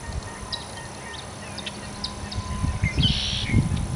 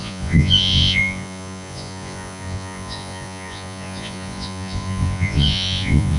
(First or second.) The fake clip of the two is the second